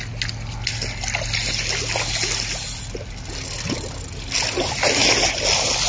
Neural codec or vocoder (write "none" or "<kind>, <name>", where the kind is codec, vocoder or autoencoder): none